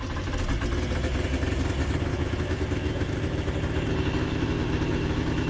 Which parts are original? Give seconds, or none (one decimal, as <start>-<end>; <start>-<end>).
0.0-2.1; 3.6-4.2